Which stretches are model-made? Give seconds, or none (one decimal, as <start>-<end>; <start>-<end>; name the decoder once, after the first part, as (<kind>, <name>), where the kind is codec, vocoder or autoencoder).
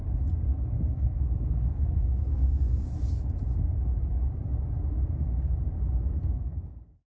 0.7-2.9 (codec, SNAC); 6.0-7.1